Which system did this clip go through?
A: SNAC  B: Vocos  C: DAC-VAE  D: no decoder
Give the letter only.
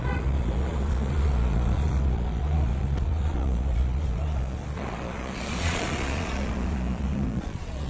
B